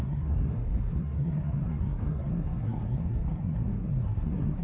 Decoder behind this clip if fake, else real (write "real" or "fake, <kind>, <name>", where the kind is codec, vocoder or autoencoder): fake, codec, SNAC